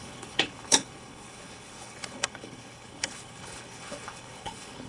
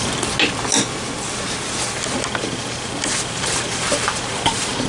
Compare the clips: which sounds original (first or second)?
second